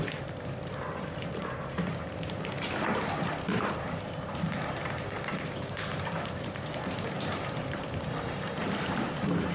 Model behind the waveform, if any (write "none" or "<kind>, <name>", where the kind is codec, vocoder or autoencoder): vocoder, BigVGAN v2